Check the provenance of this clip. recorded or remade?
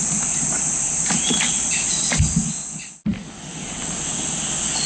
recorded